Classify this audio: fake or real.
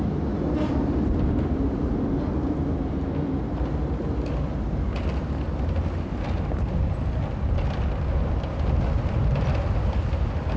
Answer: real